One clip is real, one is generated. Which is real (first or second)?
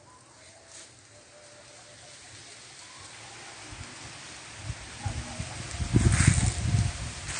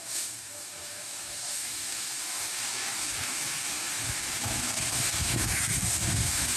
first